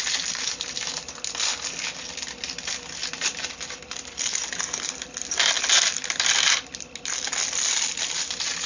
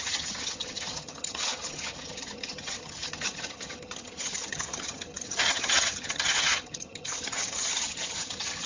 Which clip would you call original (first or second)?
first